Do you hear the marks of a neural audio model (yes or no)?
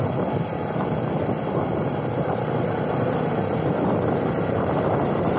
no